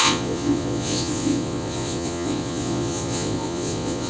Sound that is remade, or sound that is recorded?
remade